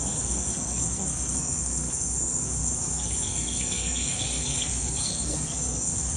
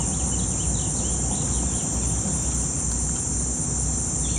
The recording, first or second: second